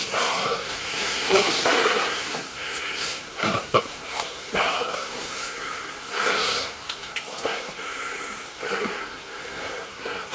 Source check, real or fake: fake